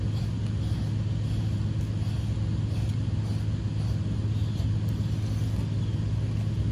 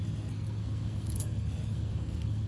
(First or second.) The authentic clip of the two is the first